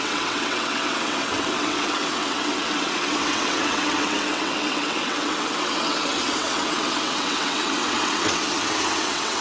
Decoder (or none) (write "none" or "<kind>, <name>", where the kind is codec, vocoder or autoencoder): vocoder, WaveNeXt